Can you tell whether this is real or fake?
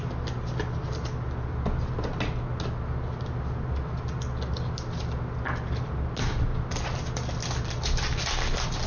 real